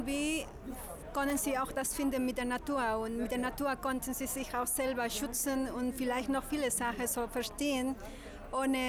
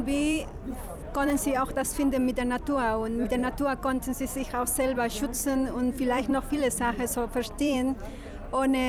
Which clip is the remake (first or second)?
second